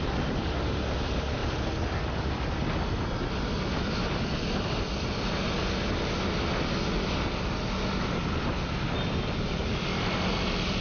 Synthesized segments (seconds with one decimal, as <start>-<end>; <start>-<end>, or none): none